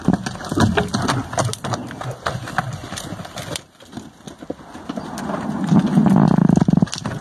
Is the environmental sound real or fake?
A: real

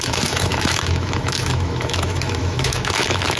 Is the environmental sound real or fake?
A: fake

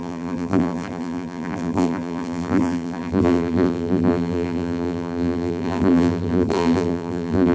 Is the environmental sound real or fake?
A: fake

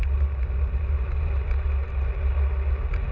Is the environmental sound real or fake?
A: real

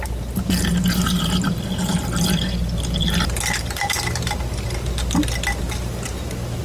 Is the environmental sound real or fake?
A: real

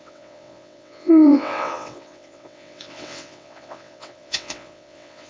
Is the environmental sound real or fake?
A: fake